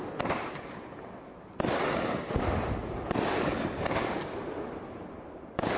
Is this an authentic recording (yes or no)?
no